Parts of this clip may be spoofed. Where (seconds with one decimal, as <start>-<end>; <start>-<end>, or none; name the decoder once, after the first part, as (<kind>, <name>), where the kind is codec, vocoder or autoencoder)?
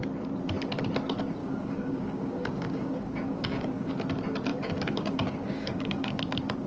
1.4-3.9 (codec, DAC); 4.5-6.2